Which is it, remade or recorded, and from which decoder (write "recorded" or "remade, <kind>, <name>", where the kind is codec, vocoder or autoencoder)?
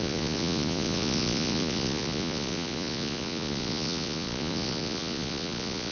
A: remade, vocoder, Vocos